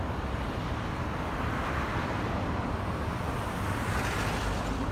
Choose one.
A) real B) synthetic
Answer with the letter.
A